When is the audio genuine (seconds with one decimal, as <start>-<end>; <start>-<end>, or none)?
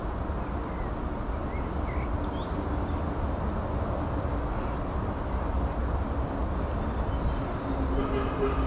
0.0-8.7